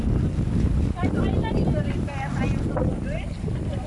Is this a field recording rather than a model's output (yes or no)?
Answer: yes